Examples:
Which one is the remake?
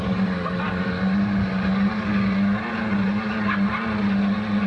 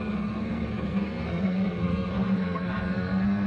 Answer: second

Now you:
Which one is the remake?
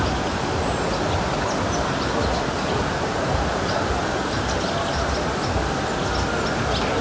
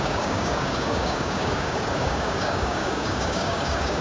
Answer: second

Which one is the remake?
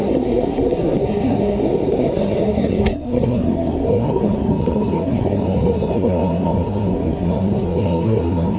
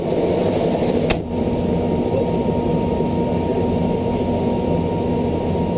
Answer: first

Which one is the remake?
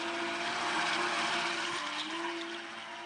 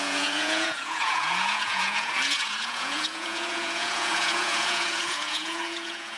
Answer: second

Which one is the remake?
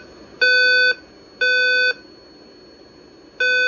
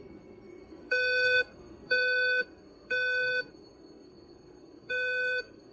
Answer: second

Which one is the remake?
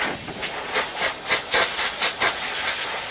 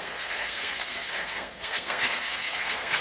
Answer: second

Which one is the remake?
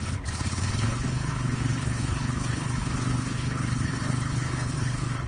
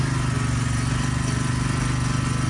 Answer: first